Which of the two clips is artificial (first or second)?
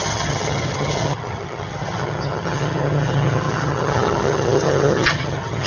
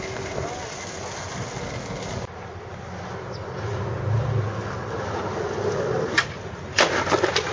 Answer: first